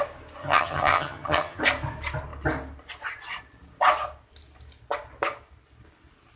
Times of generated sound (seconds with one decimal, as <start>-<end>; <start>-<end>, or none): 0.4-1.6

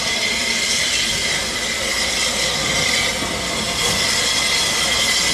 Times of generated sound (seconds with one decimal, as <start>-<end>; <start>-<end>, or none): 0.4-3.1

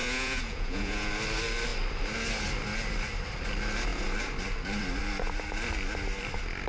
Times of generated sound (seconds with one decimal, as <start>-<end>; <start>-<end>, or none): 0.0-1.1

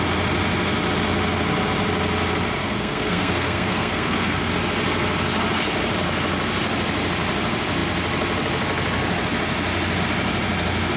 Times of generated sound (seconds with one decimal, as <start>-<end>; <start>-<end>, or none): 2.6-4.5